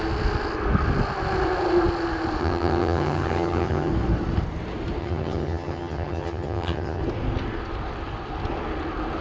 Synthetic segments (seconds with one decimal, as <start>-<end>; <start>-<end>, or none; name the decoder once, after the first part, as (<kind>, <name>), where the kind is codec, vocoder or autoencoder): 2.4-3.9 (vocoder, HiFi-GAN); 5.0-7.0